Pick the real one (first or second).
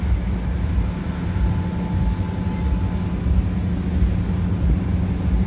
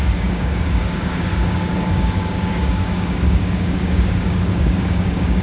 first